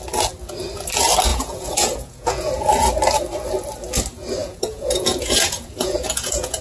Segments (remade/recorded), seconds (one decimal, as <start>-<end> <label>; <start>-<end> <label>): 0.0-1.3 recorded; 1.3-2.5 remade; 2.5-4.4 recorded; 4.4-6.6 remade